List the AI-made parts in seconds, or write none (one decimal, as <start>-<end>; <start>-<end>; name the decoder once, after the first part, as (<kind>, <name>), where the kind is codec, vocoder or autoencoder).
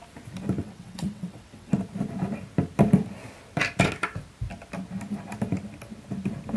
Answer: 0.6-1.7 (vocoder, WaveNeXt)